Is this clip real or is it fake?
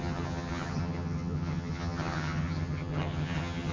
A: fake